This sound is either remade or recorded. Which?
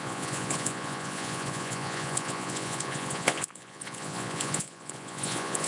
remade